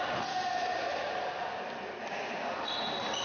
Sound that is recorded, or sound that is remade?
recorded